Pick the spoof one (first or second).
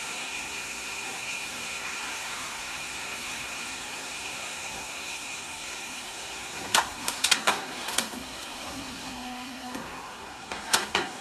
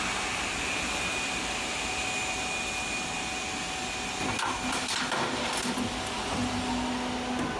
first